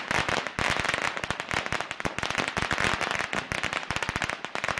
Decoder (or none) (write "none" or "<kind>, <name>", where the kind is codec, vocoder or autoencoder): none